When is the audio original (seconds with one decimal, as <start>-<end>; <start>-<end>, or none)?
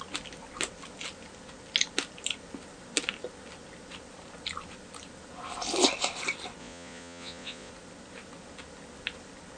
0.0-6.6; 7.7-9.6